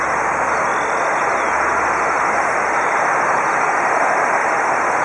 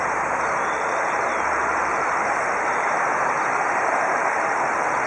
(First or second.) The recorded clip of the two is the first